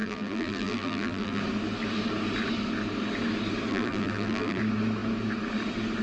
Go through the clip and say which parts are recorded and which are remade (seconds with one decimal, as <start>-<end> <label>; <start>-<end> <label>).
0.0-1.4 remade; 1.4-3.7 recorded; 3.7-4.6 remade; 4.6-6.0 recorded